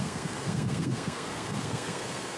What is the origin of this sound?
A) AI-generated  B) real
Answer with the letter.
A